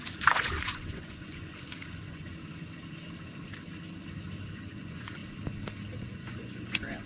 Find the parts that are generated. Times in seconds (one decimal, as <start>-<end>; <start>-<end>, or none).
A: 0.0-2.3; 4.7-5.2; 6.0-7.1